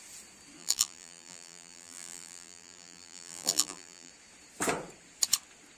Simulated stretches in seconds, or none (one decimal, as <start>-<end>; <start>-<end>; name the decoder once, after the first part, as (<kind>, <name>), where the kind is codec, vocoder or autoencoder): 0.6-4.1 (vocoder, BigVGAN v2)